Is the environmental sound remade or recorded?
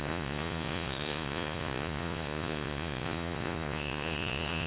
remade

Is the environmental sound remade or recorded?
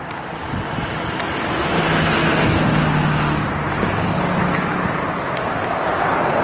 recorded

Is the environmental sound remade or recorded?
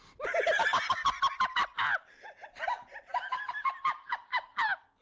recorded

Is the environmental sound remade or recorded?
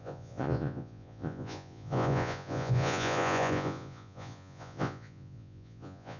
remade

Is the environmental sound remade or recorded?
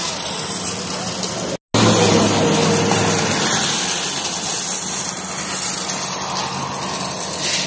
recorded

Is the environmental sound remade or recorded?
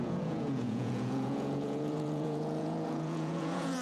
remade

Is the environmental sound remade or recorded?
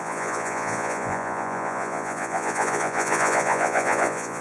remade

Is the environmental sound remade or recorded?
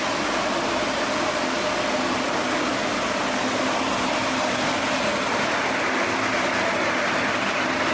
recorded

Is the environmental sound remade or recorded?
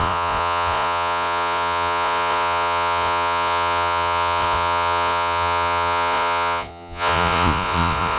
remade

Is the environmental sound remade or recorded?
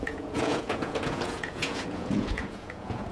remade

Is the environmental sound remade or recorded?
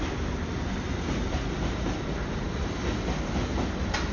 recorded